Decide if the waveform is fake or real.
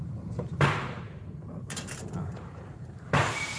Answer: fake